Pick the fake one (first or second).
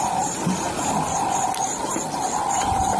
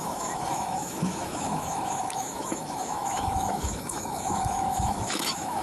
second